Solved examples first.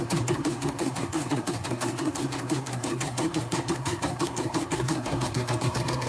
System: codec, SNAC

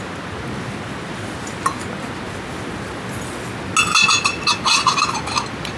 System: none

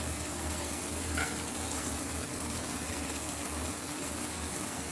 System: codec, SNAC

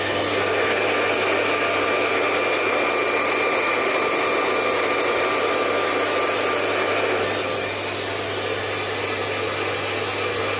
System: none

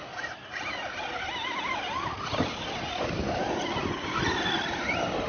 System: none